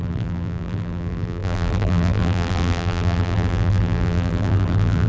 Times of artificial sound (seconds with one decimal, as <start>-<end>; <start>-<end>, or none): 0.0-5.1